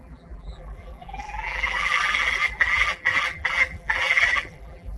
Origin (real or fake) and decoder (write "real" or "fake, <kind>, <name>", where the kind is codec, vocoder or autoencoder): fake, vocoder, BigVGAN v2